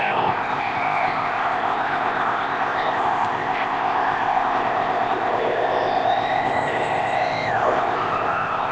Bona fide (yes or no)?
no